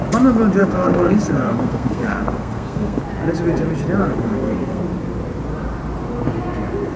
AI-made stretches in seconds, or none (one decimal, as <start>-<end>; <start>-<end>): 0.6-3.0; 4.0-4.8